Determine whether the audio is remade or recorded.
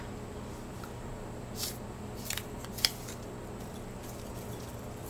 remade